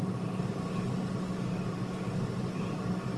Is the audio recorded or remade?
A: remade